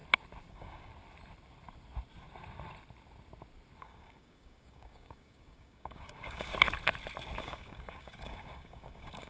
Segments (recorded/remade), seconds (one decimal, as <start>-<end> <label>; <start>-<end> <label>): 0.0-0.5 recorded; 0.5-0.9 remade; 0.9-3.8 recorded; 3.8-6.5 remade; 6.5-7.4 recorded; 7.4-9.3 remade